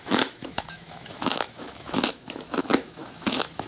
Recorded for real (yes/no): no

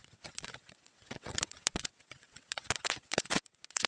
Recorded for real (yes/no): no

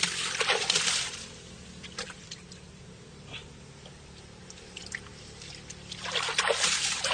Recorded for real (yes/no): no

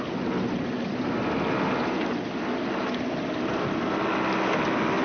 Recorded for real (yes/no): yes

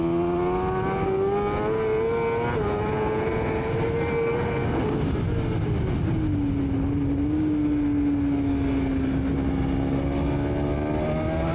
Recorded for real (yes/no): yes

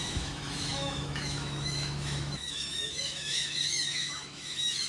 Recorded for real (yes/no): no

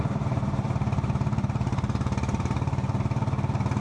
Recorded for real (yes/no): no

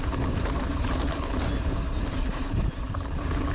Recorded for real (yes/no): no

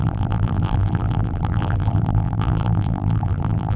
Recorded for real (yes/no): no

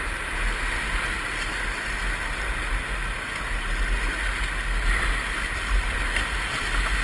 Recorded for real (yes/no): yes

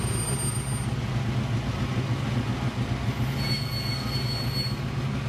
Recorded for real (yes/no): yes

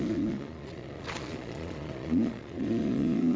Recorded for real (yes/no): no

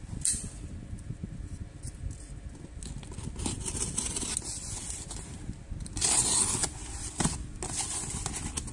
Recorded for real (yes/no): yes